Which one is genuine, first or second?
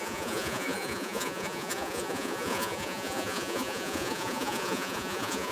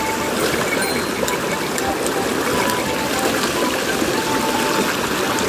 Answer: second